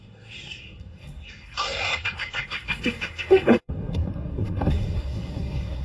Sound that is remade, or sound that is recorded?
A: remade